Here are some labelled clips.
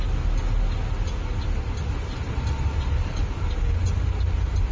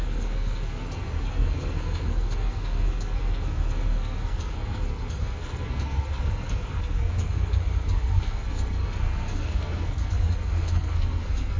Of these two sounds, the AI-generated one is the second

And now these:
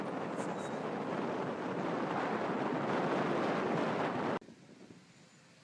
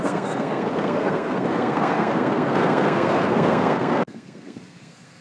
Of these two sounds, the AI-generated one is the second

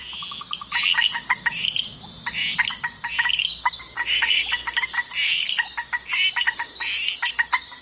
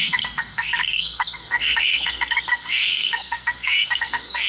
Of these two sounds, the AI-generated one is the second